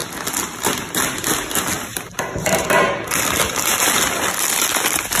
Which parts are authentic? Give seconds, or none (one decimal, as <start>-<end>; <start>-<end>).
0.0-1.9; 2.7-5.2